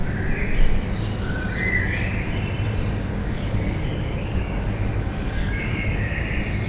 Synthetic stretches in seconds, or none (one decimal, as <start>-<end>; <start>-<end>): 3.2-5.9